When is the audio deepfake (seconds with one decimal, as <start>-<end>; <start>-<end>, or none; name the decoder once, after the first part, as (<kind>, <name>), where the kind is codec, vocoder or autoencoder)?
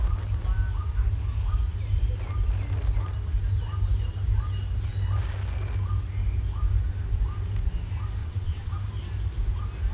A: 8.2-8.7 (vocoder, WaveNeXt)